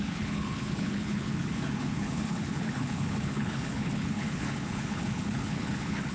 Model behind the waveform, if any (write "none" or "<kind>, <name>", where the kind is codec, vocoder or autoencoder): codec, HILCodec